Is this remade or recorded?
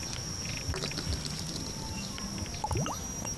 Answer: recorded